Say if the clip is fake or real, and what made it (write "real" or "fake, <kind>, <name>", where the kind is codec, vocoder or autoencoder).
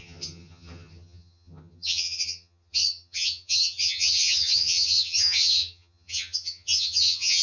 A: fake, vocoder, HiFi-GAN